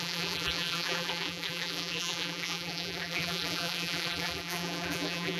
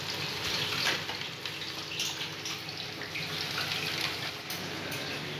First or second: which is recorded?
second